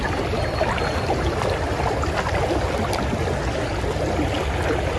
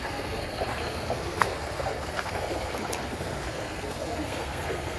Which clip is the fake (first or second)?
second